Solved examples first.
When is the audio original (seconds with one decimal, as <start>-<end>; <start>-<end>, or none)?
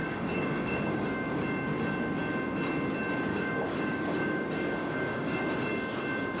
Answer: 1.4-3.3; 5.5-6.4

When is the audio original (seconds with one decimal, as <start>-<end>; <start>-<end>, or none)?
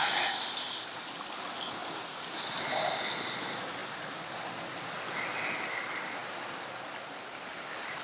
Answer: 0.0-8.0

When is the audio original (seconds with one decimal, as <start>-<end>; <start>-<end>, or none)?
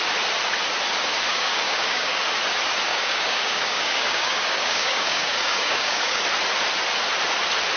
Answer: 0.0-1.3; 2.2-2.9; 6.2-7.8